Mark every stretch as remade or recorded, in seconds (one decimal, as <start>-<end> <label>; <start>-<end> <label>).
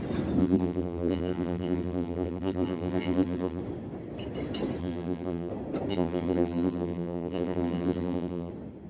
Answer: 0.0-0.4 recorded; 0.4-3.6 remade; 3.6-4.8 recorded; 4.8-5.5 remade; 5.5-5.9 recorded; 5.9-8.5 remade; 8.5-8.9 recorded